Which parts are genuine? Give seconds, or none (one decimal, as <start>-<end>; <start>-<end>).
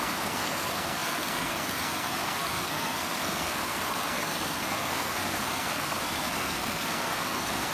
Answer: none